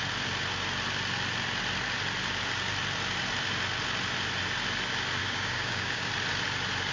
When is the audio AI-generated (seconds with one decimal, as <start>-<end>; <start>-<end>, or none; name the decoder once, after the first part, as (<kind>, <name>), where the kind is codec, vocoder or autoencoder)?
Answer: 5.2-6.1 (codec, DAC)

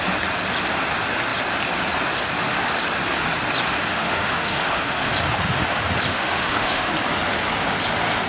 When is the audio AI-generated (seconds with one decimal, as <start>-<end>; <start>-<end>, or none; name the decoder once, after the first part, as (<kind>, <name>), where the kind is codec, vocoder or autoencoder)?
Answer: 3.9-5.1 (autoencoder, DAC-VAE); 6.1-6.9

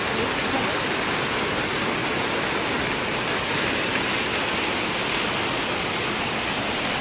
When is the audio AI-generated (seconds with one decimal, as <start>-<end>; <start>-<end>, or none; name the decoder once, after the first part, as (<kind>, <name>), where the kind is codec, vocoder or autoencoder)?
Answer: none

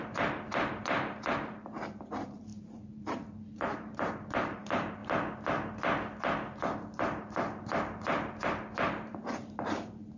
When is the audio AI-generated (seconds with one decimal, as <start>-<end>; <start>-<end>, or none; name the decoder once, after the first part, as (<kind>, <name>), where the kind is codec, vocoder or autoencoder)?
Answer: 0.0-5.0 (vocoder, BigVGAN v2); 7.0-10.2

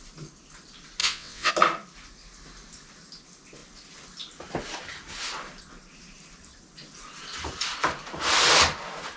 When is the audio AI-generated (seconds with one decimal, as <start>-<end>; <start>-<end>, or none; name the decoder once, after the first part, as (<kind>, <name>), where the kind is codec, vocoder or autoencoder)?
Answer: 1.0-1.5 (vocoder, WaveNeXt)

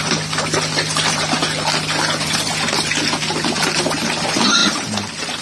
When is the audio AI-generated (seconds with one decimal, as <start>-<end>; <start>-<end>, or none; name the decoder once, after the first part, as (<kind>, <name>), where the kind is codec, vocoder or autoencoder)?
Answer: 0.0-1.4 (vocoder, BigVGAN v2); 3.2-5.4

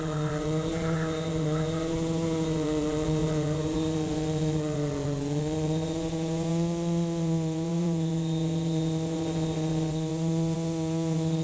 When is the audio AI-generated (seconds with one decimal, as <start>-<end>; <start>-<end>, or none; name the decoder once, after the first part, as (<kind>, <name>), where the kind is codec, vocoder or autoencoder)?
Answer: 0.0-11.4 (vocoder, Vocos)